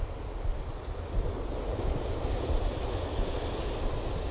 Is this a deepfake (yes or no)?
no